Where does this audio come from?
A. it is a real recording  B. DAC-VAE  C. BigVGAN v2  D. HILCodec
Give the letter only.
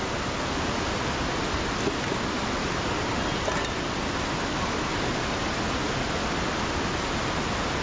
A